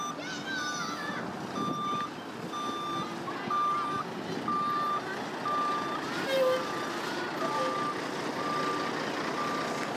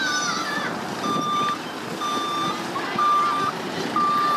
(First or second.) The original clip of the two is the first